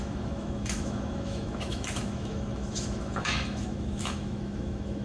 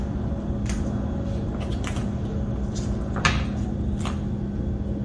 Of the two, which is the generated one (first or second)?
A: first